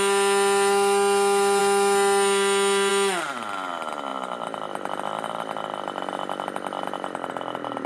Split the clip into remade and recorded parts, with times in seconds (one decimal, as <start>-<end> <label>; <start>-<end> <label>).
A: 0.0-7.9 recorded